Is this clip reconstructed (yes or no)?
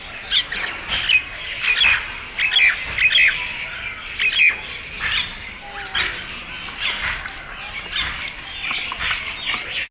no